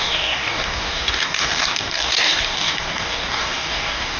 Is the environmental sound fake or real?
fake